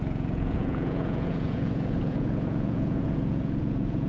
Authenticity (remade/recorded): remade